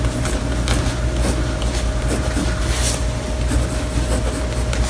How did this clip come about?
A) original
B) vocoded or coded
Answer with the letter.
A